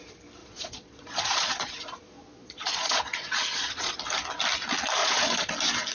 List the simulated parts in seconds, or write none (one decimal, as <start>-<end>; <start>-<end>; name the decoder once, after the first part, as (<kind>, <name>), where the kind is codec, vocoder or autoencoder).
0.4-3.9 (vocoder, Vocos); 5.0-5.5